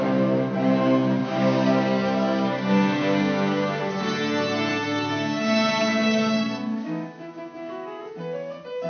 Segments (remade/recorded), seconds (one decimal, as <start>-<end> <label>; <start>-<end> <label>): 0.0-1.2 recorded; 1.2-3.8 remade; 3.8-4.7 recorded; 4.7-8.0 remade; 8.0-8.9 recorded